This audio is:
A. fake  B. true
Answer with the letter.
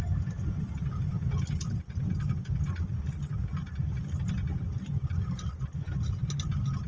B